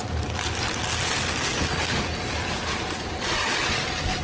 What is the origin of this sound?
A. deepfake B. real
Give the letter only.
B